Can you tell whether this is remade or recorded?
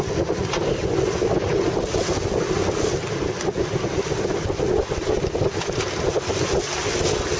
recorded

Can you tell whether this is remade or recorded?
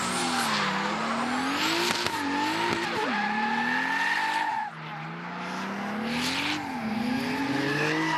recorded